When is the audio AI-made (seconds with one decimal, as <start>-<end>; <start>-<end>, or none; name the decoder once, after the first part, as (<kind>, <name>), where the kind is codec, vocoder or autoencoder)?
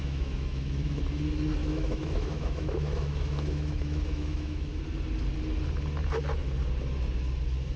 0.0-1.0 (autoencoder, DAC-VAE); 1.6-4.7